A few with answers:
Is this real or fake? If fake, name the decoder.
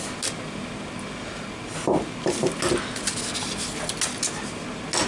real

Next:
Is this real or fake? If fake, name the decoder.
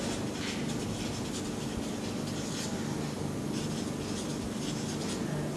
real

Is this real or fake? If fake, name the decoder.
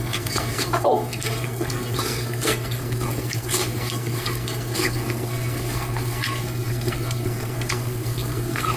fake, codec, SNAC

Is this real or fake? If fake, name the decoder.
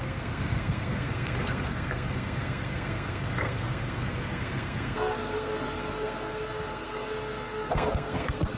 fake, codec, SNAC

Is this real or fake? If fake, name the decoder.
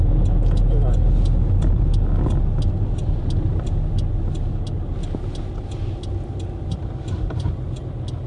real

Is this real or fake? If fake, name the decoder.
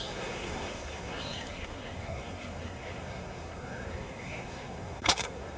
fake, codec, SNAC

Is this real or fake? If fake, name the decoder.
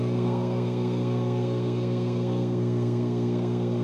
fake, codec, SNAC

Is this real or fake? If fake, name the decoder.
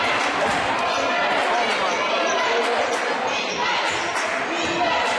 real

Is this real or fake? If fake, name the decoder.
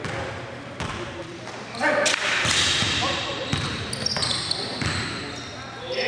real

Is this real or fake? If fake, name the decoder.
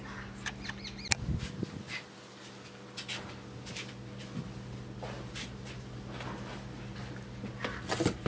real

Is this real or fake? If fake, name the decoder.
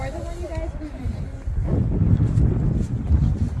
real